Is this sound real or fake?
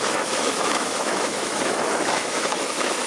fake